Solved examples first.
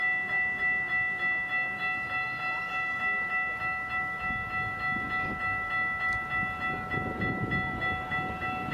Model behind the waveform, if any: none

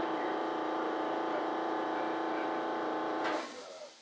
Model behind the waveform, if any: vocoder, BigVGAN v2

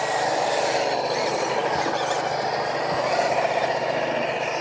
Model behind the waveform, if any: none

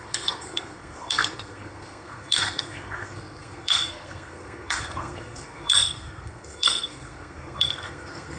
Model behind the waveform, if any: codec, SNAC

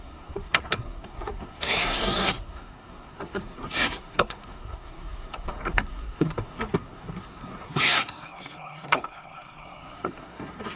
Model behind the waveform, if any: codec, SNAC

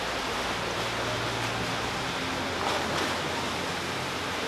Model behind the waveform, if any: none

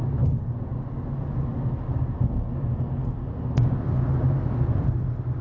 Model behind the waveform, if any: none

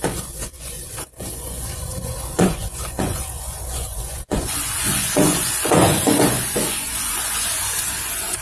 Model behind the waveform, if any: vocoder, Vocos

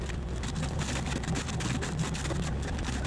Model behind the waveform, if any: none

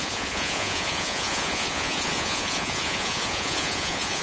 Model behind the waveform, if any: vocoder, Vocos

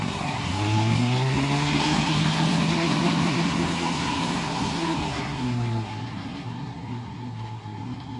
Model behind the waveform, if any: codec, SNAC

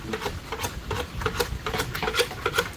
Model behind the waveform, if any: none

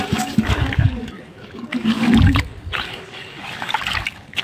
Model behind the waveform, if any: codec, DAC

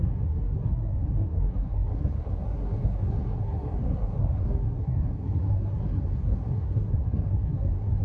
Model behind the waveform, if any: codec, SNAC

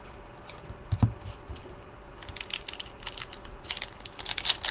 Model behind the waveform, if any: vocoder, BigVGAN v2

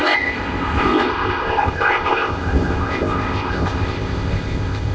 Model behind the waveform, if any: codec, ZipCodec